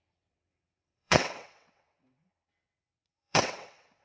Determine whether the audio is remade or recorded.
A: remade